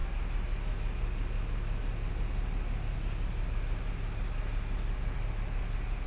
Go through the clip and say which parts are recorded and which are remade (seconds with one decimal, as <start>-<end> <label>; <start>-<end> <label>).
0.0-6.1 recorded